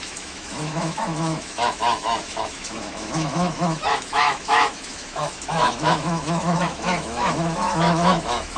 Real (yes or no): no